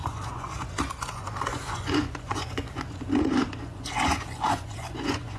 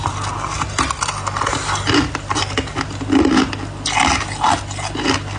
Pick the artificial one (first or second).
first